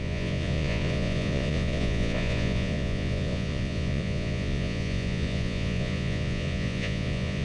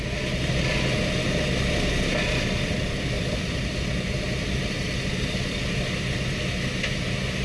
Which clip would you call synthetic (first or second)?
first